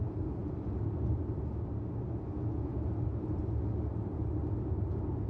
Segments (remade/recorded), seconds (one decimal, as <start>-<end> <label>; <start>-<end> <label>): 0.0-5.3 recorded